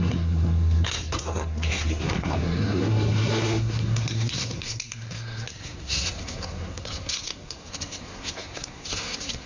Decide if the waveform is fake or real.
fake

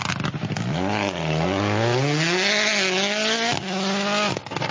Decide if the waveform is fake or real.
real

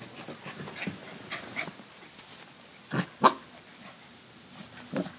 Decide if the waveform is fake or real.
real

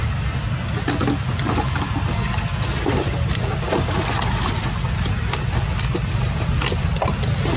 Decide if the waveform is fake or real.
real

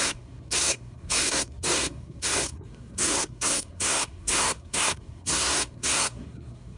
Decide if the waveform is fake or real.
fake